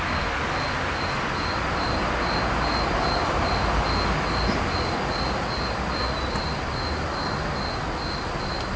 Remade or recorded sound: recorded